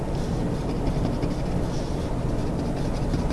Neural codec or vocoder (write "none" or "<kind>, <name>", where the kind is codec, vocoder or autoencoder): none